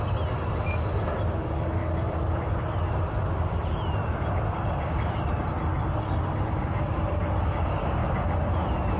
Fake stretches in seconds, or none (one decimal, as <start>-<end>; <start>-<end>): 1.8-5.2